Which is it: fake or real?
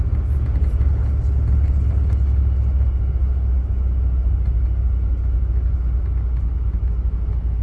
real